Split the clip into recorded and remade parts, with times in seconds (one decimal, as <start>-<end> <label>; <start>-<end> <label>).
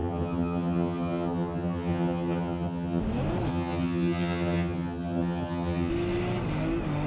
0.0-3.0 remade; 3.0-3.5 recorded; 3.5-5.9 remade; 5.9-7.1 recorded